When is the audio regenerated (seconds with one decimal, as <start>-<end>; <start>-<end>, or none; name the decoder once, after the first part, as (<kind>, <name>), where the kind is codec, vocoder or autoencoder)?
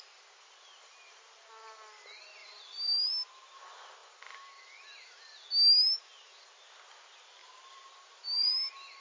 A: 2.4-3.1 (vocoder, BigVGAN v2); 7.4-8.5